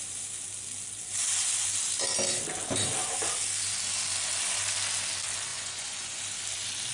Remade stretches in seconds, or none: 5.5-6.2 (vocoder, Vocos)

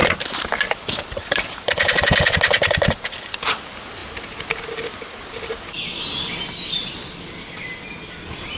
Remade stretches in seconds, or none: none

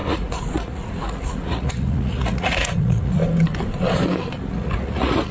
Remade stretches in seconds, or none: 0.0-3.2 (vocoder, Vocos); 4.4-5.3

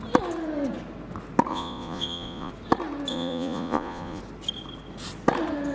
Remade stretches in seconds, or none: 1.5-2.5 (vocoder, Vocos); 3.1-4.2

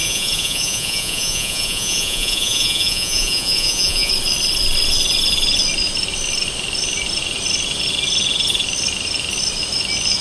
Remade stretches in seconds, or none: 0.0-4.1 (vocoder, Vocos)

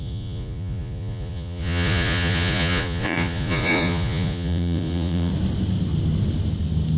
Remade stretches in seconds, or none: 0.0-5.3 (vocoder, Vocos)

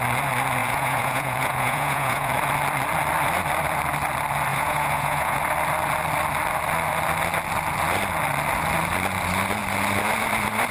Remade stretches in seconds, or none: 0.6-2.3 (vocoder, Vocos); 4.5-5.4

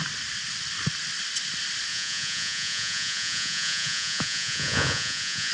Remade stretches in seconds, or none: 1.9-5.5 (vocoder, Vocos)